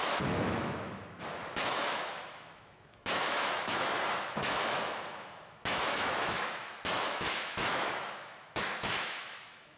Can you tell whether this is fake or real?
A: fake